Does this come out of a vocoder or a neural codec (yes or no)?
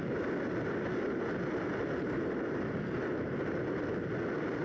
no